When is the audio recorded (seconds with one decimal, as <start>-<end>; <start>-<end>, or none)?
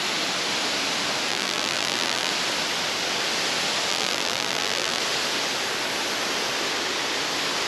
0.0-1.3; 2.3-3.9; 5.0-7.7